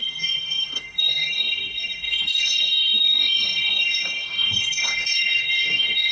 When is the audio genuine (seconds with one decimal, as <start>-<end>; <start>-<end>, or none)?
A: none